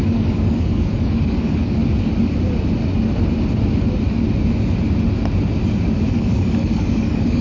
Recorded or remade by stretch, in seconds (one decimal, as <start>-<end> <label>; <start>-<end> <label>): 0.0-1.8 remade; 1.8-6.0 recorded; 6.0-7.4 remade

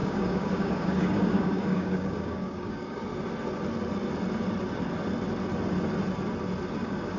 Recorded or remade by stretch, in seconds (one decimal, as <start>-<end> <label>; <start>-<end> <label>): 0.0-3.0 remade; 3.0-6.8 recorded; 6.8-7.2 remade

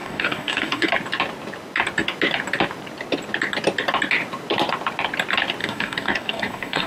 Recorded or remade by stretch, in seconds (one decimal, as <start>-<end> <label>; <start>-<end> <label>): 0.0-0.9 remade; 0.9-5.6 recorded; 5.6-6.9 remade